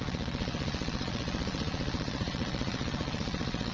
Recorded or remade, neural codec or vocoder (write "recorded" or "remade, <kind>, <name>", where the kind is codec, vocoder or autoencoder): remade, vocoder, Vocos